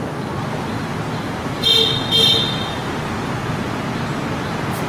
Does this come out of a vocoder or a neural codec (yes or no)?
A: no